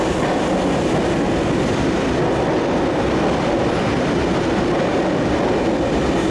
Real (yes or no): yes